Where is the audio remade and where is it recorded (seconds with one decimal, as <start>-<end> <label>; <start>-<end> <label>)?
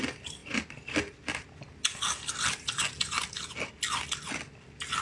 0.0-0.4 recorded; 0.4-1.2 remade; 1.2-5.0 recorded